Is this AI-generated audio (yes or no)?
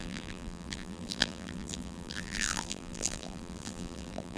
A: yes